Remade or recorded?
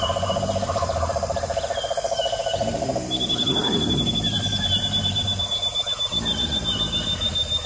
remade